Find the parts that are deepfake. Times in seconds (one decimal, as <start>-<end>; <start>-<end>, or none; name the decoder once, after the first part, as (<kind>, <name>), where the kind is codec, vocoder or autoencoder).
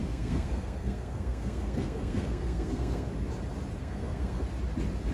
0.0-3.1 (codec, SNAC); 3.8-4.4